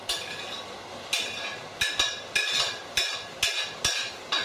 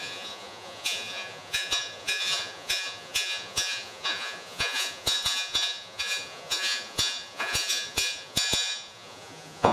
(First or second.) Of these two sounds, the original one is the first